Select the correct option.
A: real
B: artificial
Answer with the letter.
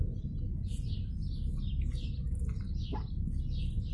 A